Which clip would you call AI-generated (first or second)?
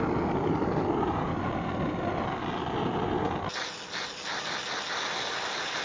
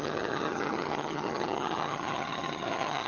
second